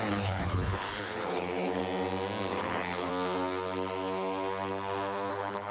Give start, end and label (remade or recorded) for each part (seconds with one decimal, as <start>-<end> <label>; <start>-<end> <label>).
0.0-1.8 remade; 1.8-2.5 recorded; 2.5-3.1 remade; 3.1-5.3 recorded; 5.3-5.7 remade